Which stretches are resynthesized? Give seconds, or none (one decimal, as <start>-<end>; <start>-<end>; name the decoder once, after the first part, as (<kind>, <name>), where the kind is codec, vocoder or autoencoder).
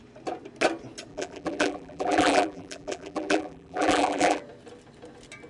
1.1-4.4 (vocoder, BigVGAN v2)